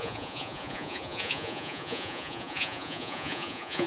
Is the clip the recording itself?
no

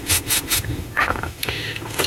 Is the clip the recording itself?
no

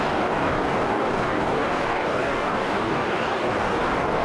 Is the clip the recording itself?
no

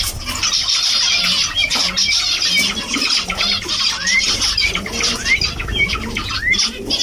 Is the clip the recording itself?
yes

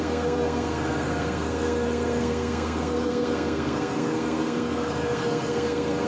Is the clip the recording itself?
no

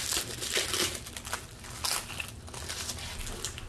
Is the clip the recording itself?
yes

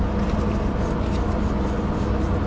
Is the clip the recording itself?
yes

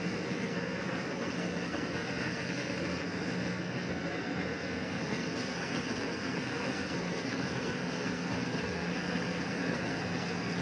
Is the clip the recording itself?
no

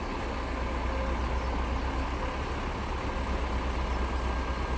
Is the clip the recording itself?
yes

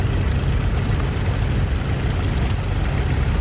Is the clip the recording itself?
yes